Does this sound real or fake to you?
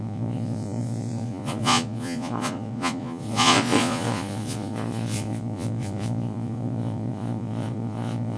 fake